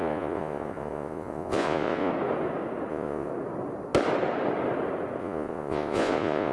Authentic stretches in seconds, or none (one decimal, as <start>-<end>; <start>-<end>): 2.1-2.9; 3.3-5.2